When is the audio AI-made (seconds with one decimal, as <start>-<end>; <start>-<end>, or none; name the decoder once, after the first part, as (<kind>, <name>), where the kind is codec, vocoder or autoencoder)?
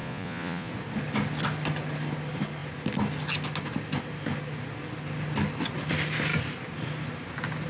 0.0-0.7 (vocoder, Vocos)